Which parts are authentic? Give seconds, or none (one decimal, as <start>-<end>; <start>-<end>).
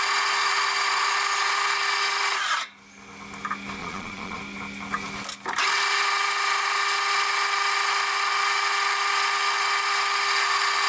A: 0.0-3.8; 4.4-10.9